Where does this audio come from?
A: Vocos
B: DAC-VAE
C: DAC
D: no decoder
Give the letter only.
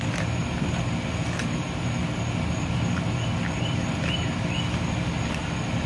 D